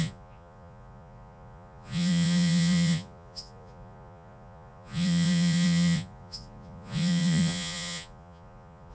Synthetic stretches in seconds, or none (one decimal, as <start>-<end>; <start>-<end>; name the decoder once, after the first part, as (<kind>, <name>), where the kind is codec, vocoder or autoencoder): 0.0-8.9 (vocoder, Vocos)